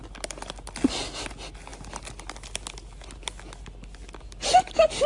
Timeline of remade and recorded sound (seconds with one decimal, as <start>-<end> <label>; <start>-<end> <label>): 0.0-5.1 recorded

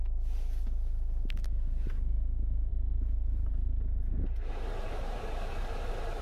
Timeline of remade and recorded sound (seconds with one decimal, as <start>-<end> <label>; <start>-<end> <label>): 0.0-2.7 recorded; 2.7-6.2 remade

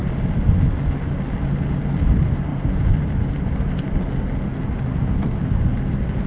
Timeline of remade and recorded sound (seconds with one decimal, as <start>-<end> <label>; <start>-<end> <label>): 0.0-2.5 recorded; 2.5-3.5 remade; 3.5-6.3 recorded

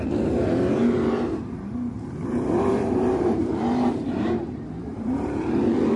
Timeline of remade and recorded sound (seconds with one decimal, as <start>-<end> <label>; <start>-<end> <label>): 0.0-0.8 recorded; 0.8-4.4 remade; 4.4-4.9 recorded; 4.9-5.6 remade; 5.6-6.0 recorded

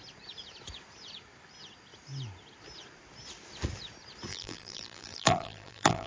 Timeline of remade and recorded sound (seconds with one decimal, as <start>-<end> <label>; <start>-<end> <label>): 0.0-4.3 recorded; 4.3-6.1 remade

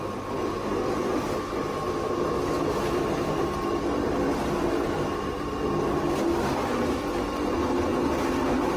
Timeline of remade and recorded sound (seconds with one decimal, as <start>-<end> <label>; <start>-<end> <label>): 0.0-8.8 recorded